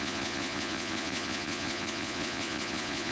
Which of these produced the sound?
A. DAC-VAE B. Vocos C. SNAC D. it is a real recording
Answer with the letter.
B